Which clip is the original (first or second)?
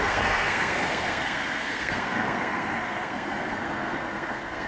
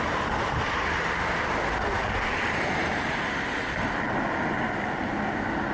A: second